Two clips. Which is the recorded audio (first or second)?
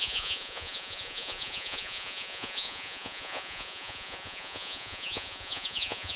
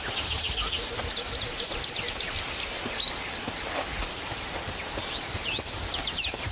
second